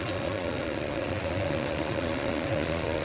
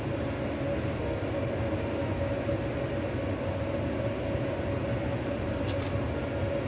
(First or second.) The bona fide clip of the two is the second